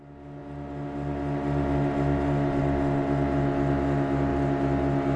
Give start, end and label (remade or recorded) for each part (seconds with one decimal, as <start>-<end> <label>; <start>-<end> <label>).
0.0-5.2 recorded